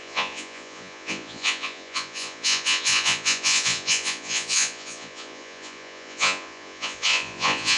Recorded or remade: remade